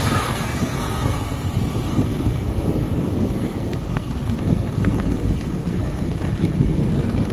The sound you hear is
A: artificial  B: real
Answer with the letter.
A